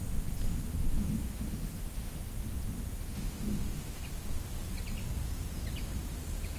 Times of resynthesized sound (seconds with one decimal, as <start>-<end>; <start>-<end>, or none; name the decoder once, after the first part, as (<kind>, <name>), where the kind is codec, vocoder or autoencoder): 0.8-2.2 (autoencoder, DAC-VAE); 3.1-4.0